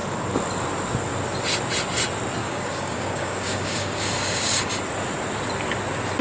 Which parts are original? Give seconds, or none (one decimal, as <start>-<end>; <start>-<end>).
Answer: 0.0-2.4; 4.7-6.2